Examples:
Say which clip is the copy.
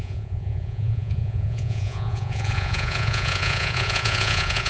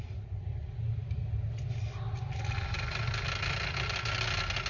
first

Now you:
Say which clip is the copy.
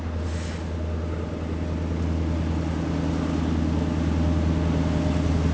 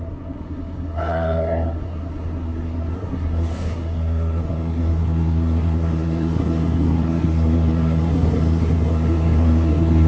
second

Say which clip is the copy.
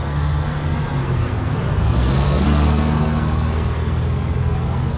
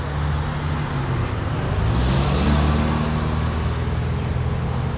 first